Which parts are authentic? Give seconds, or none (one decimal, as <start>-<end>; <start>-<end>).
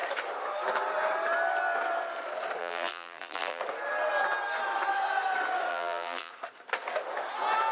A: 0.0-2.6; 3.6-5.7; 6.3-7.7